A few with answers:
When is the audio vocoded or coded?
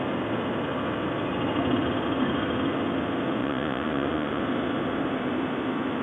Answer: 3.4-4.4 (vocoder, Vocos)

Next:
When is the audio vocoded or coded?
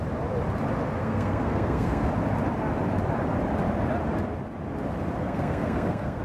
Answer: 1.0-2.1 (codec, SNAC); 5.2-6.2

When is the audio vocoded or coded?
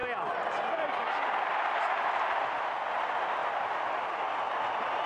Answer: none